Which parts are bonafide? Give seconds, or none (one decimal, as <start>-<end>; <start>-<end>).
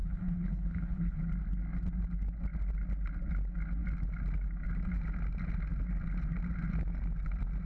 1.2-7.7